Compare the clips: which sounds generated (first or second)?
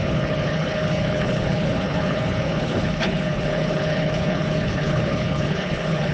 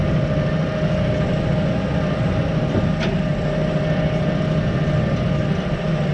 first